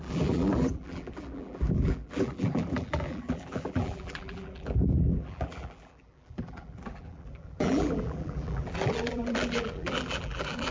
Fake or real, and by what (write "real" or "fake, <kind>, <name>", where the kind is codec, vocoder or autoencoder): fake, vocoder, BigVGAN v2